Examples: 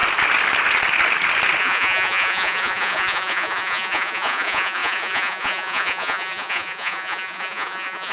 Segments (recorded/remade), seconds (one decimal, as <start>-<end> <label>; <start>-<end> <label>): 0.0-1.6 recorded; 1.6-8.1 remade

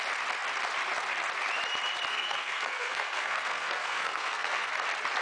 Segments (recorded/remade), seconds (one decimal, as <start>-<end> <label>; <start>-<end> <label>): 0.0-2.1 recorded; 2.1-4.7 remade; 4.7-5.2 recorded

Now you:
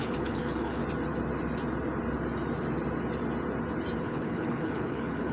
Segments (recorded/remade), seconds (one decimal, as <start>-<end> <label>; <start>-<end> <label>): 0.0-0.8 remade; 0.8-4.0 recorded; 4.0-5.3 remade